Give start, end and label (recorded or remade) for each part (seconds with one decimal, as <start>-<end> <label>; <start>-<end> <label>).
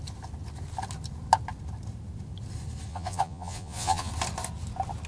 0.0-2.9 recorded; 2.9-4.1 remade; 4.1-5.1 recorded